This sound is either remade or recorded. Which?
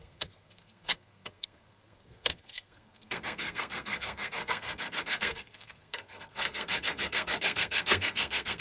remade